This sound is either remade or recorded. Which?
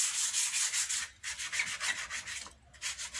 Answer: recorded